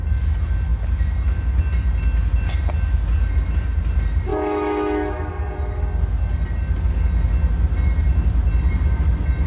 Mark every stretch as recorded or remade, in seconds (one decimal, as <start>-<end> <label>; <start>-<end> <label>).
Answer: 0.0-4.3 recorded; 4.3-5.2 remade; 5.2-9.5 recorded